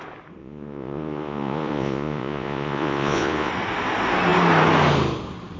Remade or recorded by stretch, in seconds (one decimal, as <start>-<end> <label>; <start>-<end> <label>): 0.0-0.4 recorded; 0.4-3.5 remade; 3.5-5.6 recorded